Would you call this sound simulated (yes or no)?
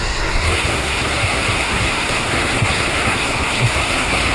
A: yes